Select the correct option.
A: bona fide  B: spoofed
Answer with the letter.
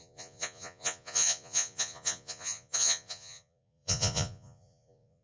B